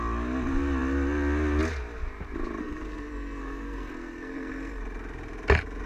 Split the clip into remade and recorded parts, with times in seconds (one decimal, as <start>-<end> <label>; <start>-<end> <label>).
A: 0.0-2.6 recorded; 2.6-4.8 remade; 4.8-5.9 recorded